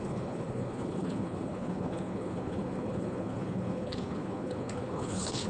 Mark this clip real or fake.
fake